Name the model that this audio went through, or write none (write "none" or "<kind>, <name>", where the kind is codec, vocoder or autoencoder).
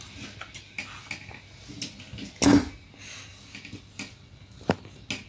none